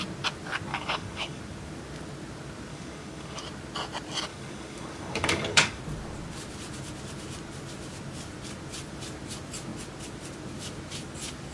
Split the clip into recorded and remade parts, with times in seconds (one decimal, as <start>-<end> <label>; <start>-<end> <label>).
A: 0.0-0.7 recorded; 0.7-1.4 remade; 1.4-2.7 recorded; 2.7-3.4 remade; 3.4-4.3 recorded; 4.3-5.8 remade; 5.8-11.5 recorded